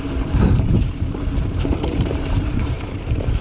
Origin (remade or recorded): remade